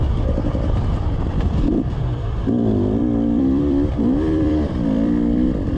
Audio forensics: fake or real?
fake